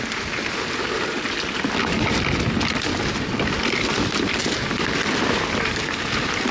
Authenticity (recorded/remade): recorded